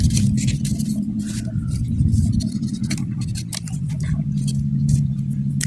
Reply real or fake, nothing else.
real